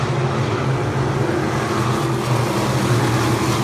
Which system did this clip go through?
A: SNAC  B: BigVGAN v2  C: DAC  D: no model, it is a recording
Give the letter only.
D